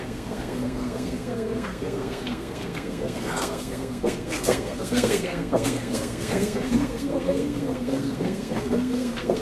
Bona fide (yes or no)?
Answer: no